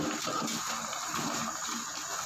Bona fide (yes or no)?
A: yes